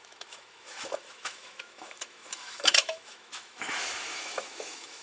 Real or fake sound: fake